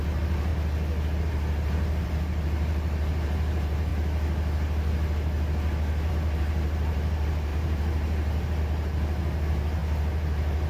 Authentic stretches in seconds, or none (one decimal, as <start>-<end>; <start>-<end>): 0.5-1.2; 3.9-6.1